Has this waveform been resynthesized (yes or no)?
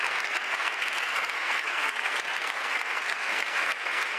yes